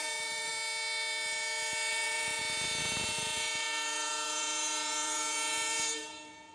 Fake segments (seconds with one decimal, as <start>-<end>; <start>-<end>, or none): 0.0-0.5; 1.9-2.4; 2.8-6.5